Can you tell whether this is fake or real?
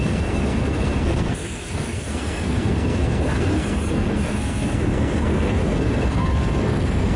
fake